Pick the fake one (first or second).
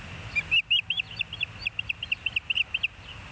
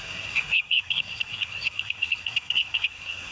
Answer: second